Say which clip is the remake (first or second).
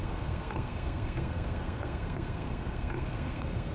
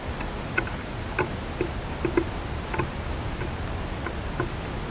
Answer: first